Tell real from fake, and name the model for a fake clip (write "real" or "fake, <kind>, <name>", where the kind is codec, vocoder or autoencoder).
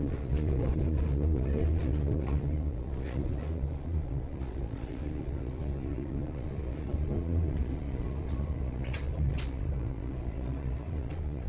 fake, vocoder, Vocos